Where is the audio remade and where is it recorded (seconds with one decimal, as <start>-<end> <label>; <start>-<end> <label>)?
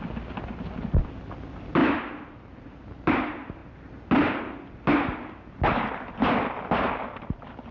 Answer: 0.0-7.7 recorded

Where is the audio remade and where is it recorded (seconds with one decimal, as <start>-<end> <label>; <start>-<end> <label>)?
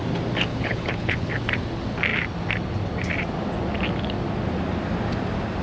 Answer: 0.0-0.5 recorded; 0.5-1.3 remade; 1.3-5.6 recorded